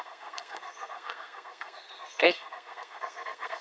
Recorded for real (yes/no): no